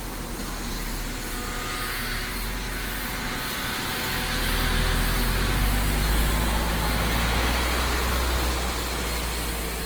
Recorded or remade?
recorded